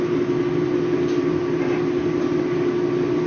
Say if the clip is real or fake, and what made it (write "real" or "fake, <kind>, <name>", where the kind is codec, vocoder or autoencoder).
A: real